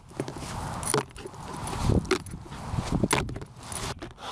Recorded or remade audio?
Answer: recorded